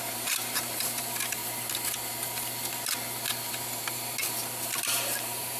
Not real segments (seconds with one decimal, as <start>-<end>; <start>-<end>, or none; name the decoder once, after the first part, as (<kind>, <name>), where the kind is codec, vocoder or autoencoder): 0.0-1.4 (vocoder, BigVGAN v2); 4.8-5.6